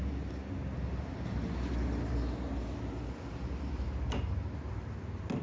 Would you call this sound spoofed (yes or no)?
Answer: no